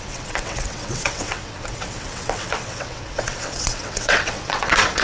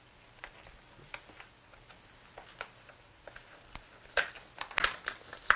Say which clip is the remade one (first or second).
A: first